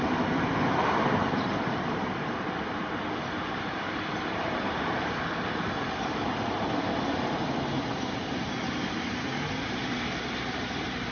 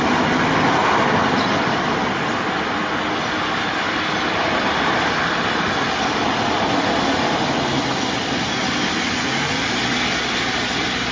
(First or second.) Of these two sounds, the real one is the second